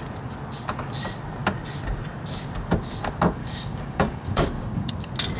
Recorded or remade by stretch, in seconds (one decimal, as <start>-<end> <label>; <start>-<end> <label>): 0.0-3.4 recorded; 3.4-4.9 remade; 4.9-5.4 recorded